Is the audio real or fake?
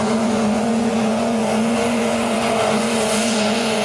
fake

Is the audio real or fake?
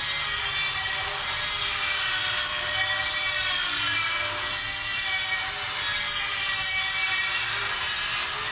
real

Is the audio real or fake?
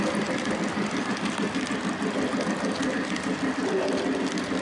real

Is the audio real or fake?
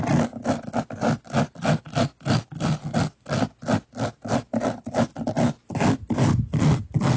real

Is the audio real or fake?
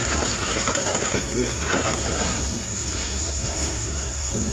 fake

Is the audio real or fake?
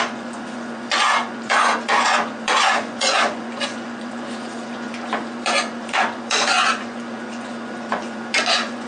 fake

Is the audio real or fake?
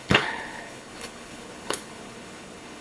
fake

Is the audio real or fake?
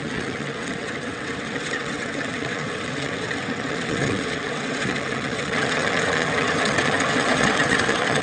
fake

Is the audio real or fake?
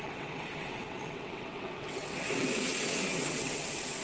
fake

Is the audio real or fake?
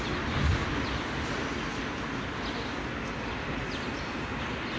real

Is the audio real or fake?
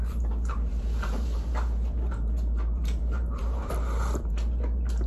fake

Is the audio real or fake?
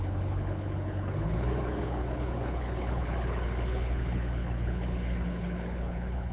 fake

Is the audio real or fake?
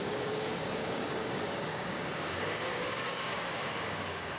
fake